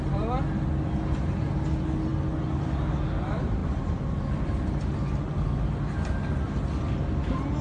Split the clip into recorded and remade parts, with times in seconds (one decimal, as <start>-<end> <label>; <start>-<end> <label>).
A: 0.0-3.6 recorded; 3.6-4.4 remade; 4.4-7.6 recorded